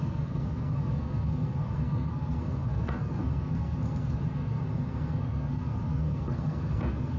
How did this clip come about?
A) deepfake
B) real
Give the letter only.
A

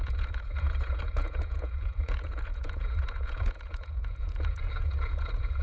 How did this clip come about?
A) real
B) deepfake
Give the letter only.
B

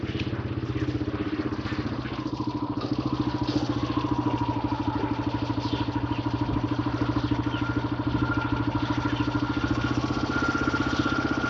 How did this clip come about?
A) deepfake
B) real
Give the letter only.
B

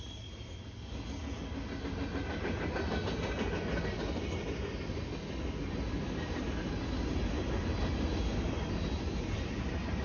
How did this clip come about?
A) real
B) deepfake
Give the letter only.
A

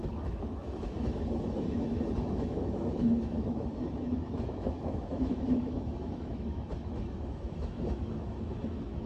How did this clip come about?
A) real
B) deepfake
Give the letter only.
B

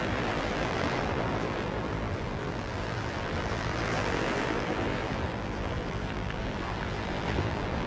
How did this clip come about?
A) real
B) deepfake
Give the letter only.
B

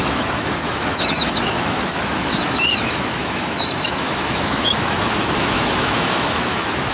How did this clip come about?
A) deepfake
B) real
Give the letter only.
A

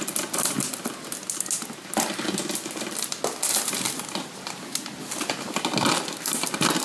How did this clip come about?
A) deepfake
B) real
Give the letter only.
B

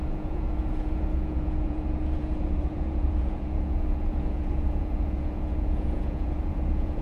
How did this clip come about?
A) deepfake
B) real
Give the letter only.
A